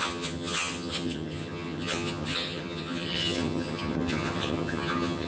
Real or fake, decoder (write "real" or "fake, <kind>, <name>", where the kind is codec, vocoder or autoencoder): fake, vocoder, HiFi-GAN